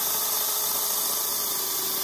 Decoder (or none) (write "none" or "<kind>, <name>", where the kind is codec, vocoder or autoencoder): none